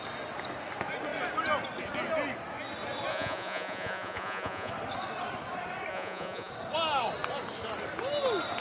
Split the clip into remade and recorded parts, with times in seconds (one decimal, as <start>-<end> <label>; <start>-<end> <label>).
0.0-3.1 recorded; 3.1-4.7 remade; 4.7-5.9 recorded; 5.9-6.5 remade; 6.5-8.6 recorded